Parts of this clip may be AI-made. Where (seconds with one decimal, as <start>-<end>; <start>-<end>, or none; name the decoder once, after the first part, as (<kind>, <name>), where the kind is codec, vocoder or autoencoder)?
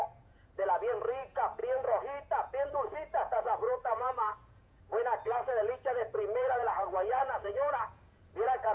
0.0-8.7 (vocoder, Vocos)